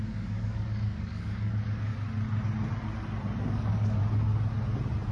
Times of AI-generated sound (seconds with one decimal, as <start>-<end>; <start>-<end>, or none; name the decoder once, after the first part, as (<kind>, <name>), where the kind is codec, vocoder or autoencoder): 0.0-1.9 (codec, DAC); 3.5-4.0

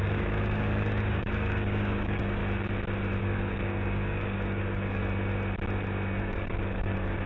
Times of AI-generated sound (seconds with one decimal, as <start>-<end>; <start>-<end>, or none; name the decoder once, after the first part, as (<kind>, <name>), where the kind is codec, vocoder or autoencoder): 0.0-2.4 (codec, DAC); 3.2-5.0; 6.2-7.3

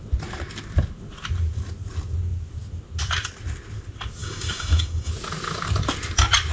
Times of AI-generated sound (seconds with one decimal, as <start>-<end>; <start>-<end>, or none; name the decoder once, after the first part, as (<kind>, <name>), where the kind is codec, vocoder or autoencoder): 4.2-5.1 (codec, DAC)

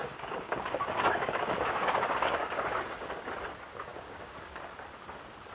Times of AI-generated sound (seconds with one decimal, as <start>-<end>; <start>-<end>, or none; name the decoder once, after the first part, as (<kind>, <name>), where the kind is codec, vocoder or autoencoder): 0.0-3.3 (codec, DAC); 3.9-4.6

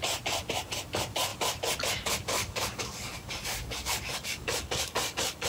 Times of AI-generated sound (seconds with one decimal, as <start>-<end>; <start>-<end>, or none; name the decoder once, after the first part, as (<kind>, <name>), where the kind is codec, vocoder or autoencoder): 2.4-5.5 (codec, DAC)